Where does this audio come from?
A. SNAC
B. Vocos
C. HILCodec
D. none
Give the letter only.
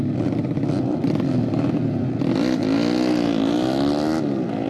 D